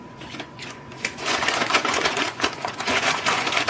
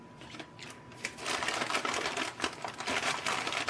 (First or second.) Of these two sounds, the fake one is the first